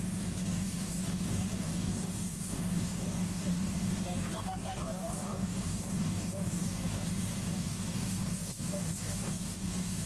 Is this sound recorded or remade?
remade